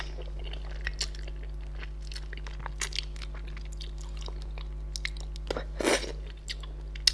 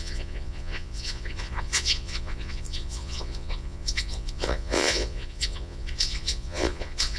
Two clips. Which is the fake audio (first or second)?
second